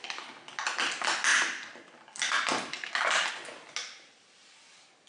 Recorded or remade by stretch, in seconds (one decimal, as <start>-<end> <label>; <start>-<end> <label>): 0.0-5.1 recorded